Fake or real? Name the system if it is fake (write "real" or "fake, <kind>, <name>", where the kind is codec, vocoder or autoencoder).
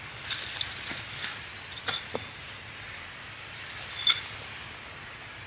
real